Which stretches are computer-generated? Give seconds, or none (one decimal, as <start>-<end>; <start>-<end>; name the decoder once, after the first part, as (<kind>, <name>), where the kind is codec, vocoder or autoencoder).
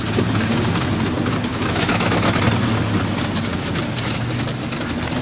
1.5-2.4 (autoencoder, DAC-VAE)